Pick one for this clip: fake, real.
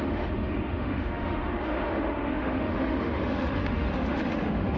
fake